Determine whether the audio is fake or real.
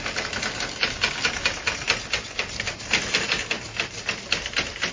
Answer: real